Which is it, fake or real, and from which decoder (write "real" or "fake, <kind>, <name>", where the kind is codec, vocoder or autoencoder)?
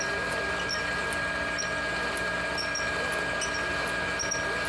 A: real